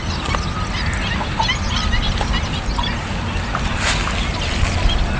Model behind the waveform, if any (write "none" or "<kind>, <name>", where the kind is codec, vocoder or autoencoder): none